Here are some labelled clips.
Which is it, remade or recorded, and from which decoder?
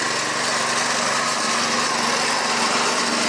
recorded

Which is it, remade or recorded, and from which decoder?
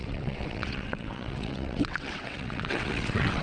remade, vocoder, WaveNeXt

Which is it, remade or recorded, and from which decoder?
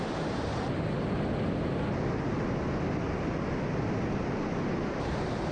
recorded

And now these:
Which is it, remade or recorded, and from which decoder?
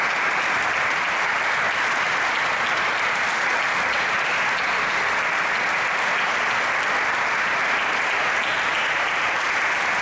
recorded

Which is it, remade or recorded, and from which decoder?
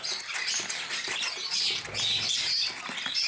recorded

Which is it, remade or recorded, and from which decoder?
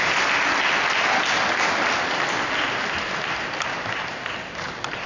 recorded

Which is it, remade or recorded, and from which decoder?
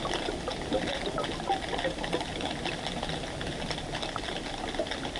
recorded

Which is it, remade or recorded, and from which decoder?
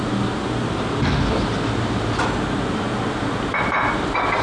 recorded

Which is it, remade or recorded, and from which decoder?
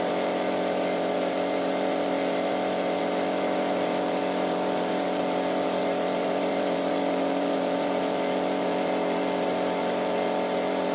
remade, vocoder, BigVGAN v2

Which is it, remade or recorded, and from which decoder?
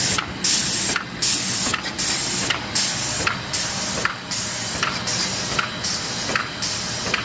recorded